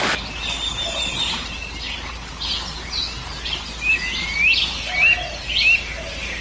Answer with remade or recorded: recorded